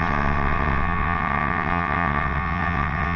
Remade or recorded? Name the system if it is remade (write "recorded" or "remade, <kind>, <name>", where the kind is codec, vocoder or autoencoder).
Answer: remade, vocoder, WaveNeXt